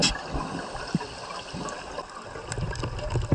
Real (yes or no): yes